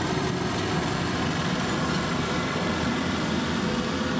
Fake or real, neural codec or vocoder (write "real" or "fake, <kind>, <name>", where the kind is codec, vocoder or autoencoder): real